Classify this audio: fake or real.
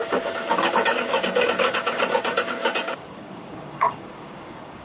fake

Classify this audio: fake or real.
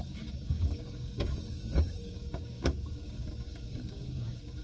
fake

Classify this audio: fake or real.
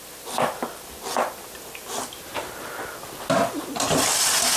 real